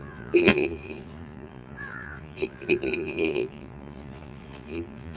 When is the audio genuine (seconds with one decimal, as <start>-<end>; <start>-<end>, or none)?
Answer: none